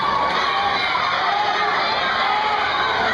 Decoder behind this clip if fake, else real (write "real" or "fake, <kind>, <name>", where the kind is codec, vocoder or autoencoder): real